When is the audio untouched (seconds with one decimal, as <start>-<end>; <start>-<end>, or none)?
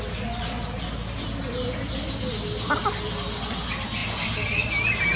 0.0-5.2